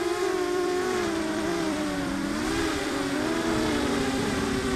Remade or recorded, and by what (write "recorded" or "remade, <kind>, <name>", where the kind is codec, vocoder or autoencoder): remade, vocoder, BigVGAN v2